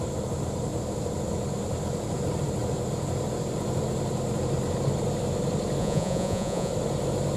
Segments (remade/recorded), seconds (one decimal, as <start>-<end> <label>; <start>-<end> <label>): 0.0-5.8 recorded; 5.8-6.7 remade; 6.7-7.4 recorded